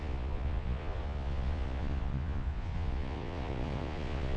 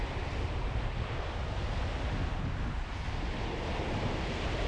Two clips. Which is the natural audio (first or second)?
second